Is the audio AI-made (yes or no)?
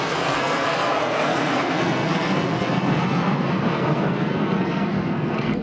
yes